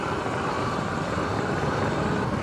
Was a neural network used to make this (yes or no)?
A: no